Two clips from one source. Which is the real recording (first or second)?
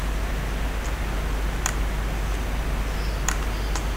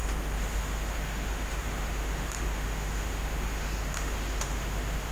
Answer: first